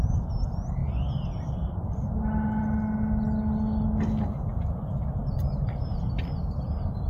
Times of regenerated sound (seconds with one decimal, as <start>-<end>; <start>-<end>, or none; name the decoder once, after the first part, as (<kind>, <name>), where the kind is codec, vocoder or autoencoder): none